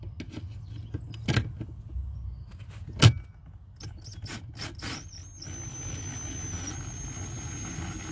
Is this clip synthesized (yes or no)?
no